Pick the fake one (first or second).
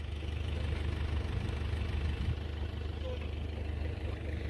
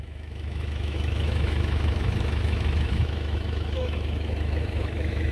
second